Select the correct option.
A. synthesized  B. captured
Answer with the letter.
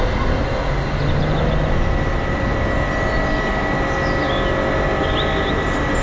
B